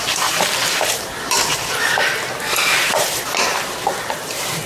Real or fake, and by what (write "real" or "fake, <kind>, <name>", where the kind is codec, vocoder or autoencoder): fake, vocoder, BigVGAN v2